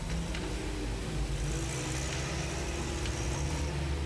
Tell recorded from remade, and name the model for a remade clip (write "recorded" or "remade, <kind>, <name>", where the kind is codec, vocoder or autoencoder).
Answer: recorded